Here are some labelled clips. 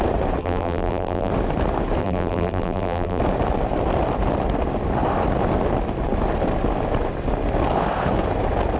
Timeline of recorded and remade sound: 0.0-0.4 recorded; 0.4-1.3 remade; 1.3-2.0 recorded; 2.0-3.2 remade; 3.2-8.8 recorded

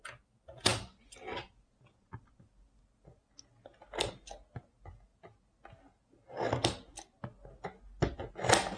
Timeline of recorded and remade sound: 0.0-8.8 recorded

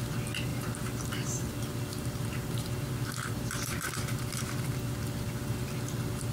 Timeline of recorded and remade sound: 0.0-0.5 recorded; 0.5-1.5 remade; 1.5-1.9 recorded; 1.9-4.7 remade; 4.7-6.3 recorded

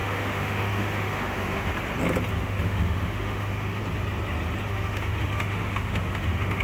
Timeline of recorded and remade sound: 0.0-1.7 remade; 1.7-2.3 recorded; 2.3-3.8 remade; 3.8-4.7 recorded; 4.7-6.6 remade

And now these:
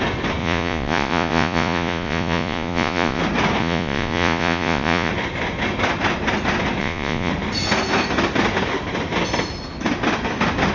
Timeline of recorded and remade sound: 0.0-0.4 recorded; 0.4-3.2 remade; 3.2-3.6 recorded; 3.6-5.1 remade; 5.1-6.8 recorded; 6.8-7.3 remade; 7.3-10.7 recorded